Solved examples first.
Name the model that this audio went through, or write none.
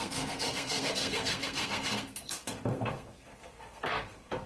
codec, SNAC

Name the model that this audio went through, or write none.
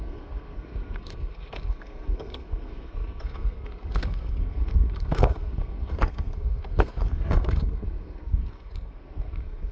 codec, SNAC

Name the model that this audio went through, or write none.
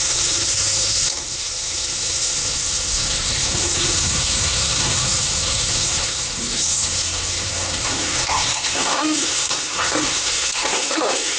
codec, SNAC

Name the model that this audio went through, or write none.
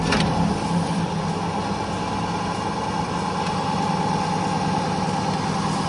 none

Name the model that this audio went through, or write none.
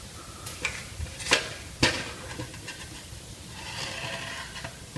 none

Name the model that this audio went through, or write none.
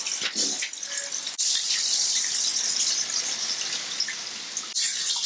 none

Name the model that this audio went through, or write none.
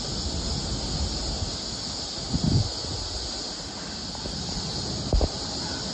none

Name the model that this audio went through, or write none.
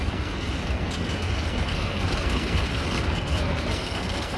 codec, SNAC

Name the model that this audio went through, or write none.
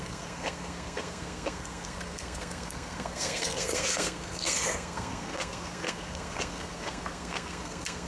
codec, SNAC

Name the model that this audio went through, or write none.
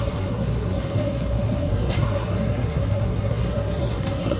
codec, SNAC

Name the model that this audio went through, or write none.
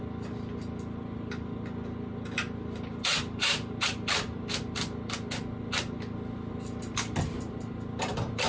none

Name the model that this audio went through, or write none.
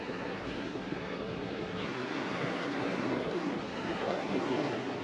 codec, SNAC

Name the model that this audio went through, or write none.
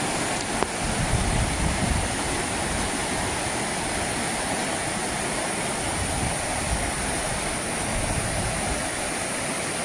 none